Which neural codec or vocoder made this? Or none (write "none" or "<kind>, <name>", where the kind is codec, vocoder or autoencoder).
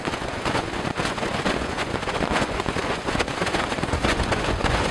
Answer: vocoder, Vocos